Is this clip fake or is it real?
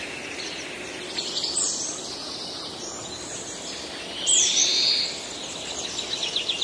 real